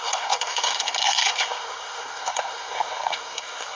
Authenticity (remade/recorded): remade